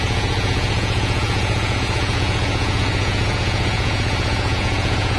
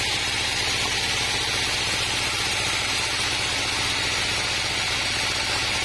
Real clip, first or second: second